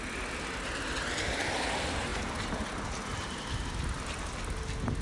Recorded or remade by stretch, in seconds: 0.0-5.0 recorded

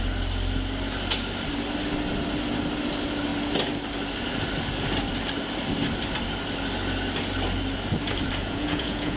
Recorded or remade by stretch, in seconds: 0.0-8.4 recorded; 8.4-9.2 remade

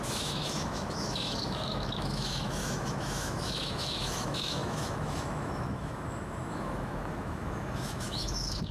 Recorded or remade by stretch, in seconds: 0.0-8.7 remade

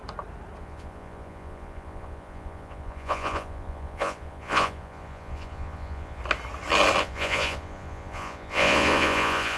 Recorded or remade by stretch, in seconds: 0.0-0.6 recorded; 0.6-6.2 remade; 6.2-7.0 recorded; 7.0-9.6 remade

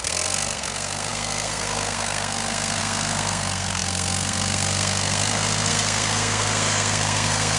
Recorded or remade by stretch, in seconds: 0.0-7.6 remade

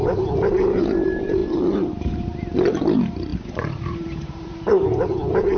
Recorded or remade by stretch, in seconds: 0.0-5.6 remade

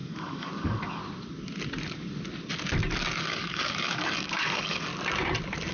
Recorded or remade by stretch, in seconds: 0.0-1.0 remade; 1.0-3.2 recorded; 3.2-4.9 remade; 4.9-5.7 recorded

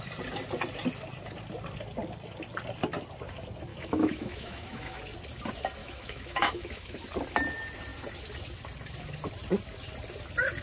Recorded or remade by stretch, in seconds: 0.0-3.7 recorded; 3.7-5.0 remade; 5.0-5.8 recorded; 5.8-7.0 remade; 7.0-10.6 recorded